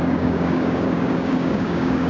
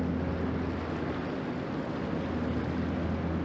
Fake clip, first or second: first